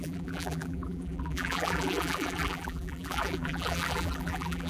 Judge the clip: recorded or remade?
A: remade